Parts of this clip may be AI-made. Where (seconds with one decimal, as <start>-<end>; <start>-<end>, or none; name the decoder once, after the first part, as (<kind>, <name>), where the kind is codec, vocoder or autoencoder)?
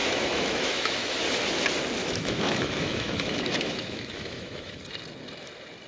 0.0-1.2 (autoencoder, DAC-VAE); 2.0-4.8